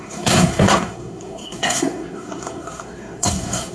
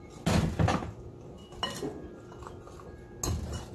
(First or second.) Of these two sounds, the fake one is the first